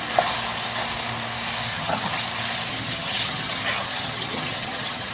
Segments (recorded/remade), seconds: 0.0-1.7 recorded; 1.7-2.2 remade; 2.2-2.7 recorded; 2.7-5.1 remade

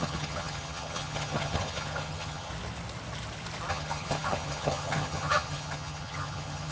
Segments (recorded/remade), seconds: 0.0-2.5 remade; 2.5-3.7 recorded; 3.7-6.7 remade

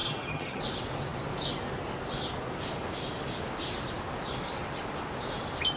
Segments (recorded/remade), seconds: 0.0-0.6 remade; 0.6-5.8 recorded

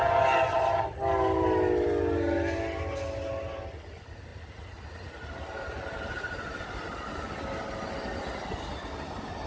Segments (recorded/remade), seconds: 0.0-9.5 recorded

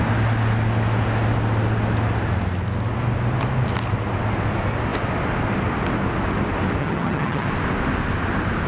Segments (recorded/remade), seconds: 0.0-6.8 recorded; 6.8-7.5 remade; 7.5-8.7 recorded

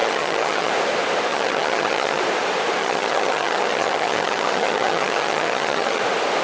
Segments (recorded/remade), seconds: 0.0-0.7 remade; 0.7-1.3 recorded; 1.3-2.2 remade; 2.2-2.8 recorded; 2.8-6.0 remade; 6.0-6.4 recorded

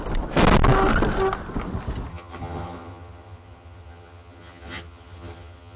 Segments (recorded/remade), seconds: 0.0-2.1 recorded; 2.1-5.8 remade